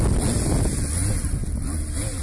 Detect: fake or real real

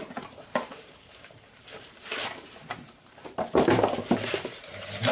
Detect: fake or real fake